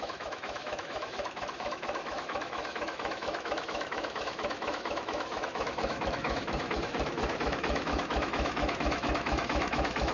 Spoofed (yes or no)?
yes